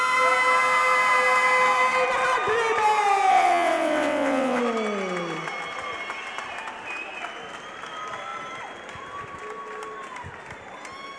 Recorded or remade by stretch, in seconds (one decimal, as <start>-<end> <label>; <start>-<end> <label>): 0.0-3.3 recorded; 3.3-4.6 remade; 4.6-11.2 recorded